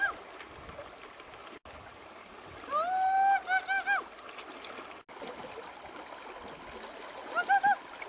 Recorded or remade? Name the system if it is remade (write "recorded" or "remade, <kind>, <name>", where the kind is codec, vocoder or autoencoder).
recorded